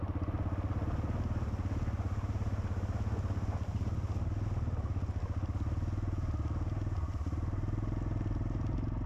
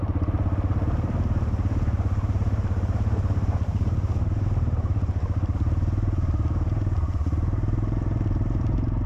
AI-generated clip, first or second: second